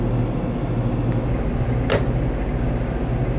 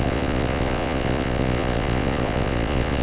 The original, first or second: first